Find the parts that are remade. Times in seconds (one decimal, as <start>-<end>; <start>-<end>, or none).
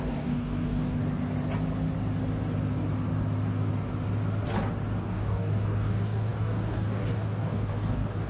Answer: 0.0-1.0; 5.0-8.3